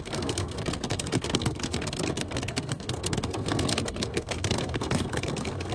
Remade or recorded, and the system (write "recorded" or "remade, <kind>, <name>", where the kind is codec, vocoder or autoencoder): remade, codec, SNAC